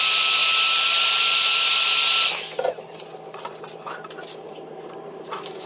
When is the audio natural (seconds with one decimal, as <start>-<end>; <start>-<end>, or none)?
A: 0.0-5.7